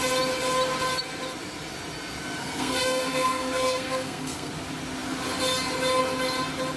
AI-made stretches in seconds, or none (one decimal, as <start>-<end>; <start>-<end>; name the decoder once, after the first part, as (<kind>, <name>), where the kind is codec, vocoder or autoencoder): 2.4-4.5 (codec, SNAC)